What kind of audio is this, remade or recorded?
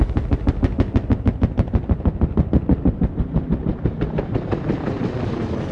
recorded